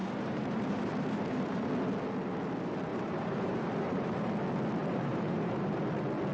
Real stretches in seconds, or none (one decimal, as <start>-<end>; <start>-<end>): 1.7-2.9; 4.3-4.8; 5.8-6.3